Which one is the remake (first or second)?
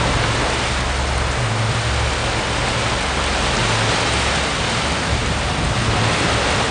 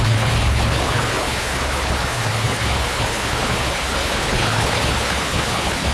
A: second